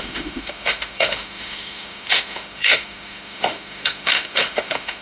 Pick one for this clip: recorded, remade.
remade